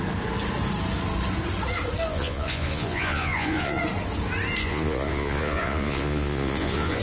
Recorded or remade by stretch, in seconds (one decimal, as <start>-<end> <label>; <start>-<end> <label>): 0.0-2.1 recorded; 2.1-3.8 remade; 3.8-4.6 recorded; 4.6-7.0 remade